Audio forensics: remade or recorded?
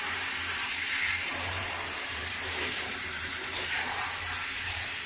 remade